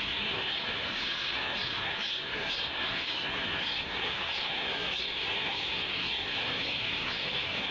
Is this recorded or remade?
remade